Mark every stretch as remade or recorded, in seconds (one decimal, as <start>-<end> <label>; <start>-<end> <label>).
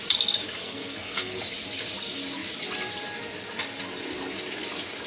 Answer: 0.0-0.6 recorded; 0.6-1.4 remade; 1.4-5.1 recorded